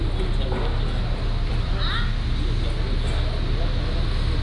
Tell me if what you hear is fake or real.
real